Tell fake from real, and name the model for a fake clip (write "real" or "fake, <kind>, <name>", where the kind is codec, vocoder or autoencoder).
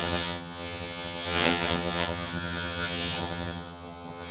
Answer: fake, vocoder, HiFi-GAN